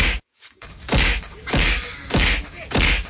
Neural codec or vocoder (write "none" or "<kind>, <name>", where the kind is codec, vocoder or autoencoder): codec, DAC